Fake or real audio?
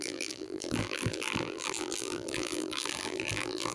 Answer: fake